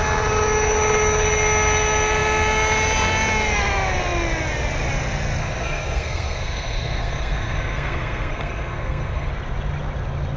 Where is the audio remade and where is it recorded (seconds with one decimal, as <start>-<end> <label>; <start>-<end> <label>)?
0.0-5.4 recorded; 5.4-9.3 remade; 9.3-10.4 recorded